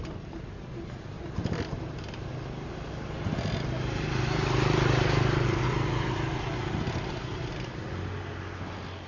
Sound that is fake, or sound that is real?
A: real